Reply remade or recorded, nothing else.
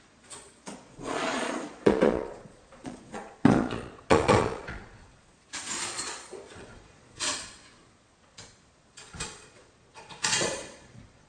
remade